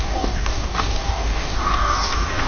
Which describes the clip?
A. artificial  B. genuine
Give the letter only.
A